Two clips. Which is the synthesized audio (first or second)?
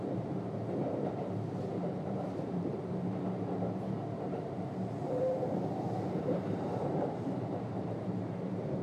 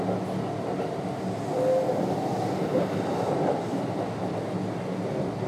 first